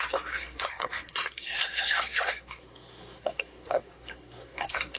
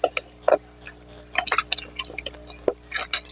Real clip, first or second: second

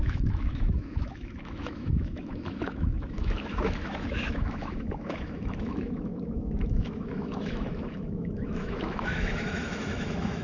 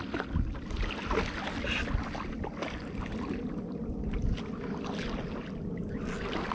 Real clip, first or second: second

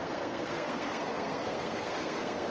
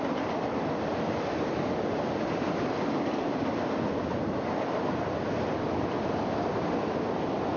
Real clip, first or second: second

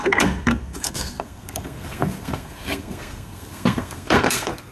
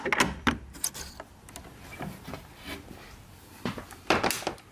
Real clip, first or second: second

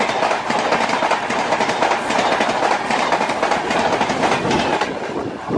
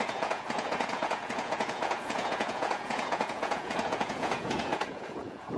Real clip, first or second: first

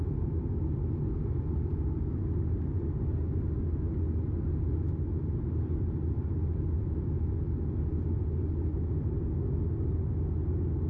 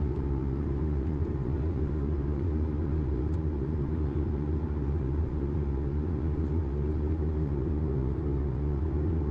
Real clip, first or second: first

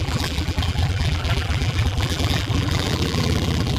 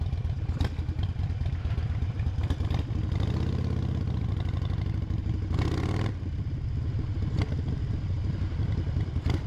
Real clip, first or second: second